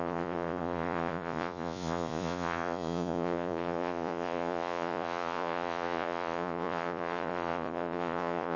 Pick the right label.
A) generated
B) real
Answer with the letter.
A